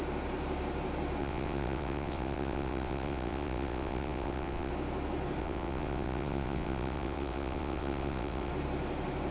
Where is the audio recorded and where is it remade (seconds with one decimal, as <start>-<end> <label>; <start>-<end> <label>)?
0.0-1.2 recorded; 1.2-4.7 remade; 4.7-5.4 recorded; 5.4-8.5 remade; 8.5-9.3 recorded